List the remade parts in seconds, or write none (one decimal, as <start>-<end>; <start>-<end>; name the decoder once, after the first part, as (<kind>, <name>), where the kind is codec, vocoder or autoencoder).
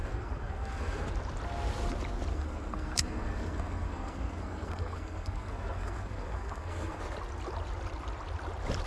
0.0-1.1 (codec, SNAC); 2.3-7.0